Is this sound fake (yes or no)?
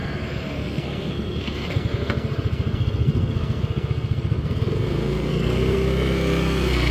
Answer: yes